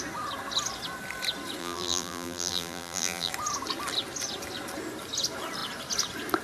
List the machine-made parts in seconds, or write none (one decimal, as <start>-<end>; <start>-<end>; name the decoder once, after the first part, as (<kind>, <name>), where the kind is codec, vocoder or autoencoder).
1.6-3.3 (vocoder, BigVGAN v2)